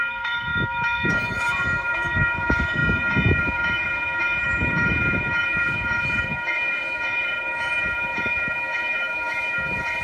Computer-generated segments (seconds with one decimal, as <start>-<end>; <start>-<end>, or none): 0.0-2.8; 3.4-10.0